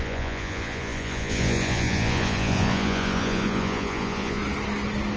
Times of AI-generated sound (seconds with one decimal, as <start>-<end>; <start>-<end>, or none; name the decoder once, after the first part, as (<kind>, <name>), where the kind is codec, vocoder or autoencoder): 0.0-4.4 (vocoder, Vocos)